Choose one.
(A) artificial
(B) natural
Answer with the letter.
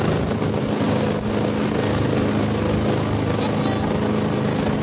B